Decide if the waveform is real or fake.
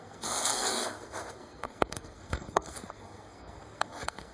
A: fake